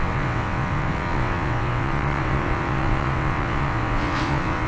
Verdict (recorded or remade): remade